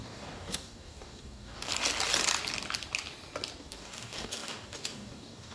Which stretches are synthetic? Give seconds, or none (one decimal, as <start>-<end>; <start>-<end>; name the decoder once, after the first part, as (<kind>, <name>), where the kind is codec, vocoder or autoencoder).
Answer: 0.0-1.7 (codec, DAC); 3.6-5.5